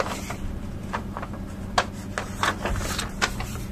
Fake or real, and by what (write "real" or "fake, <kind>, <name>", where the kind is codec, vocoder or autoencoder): real